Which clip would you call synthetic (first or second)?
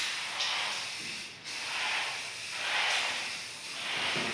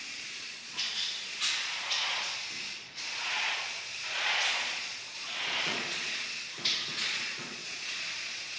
second